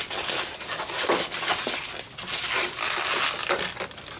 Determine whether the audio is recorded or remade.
recorded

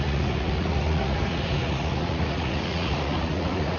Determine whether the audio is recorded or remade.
remade